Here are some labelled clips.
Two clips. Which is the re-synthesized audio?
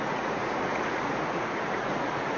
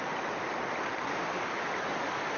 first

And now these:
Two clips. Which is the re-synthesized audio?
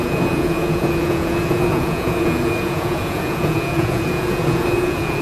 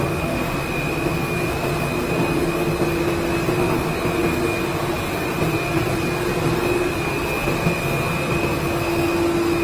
first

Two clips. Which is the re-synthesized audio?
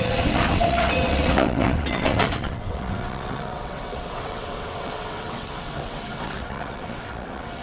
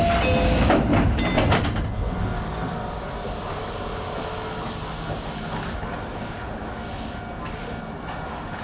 first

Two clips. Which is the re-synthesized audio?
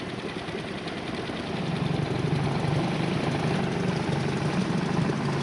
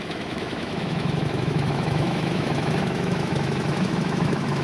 second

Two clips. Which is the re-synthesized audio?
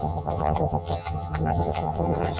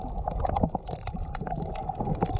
first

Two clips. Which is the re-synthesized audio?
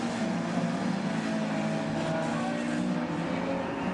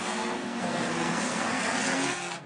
second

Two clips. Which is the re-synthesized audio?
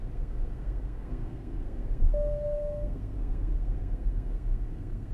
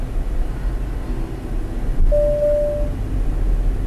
first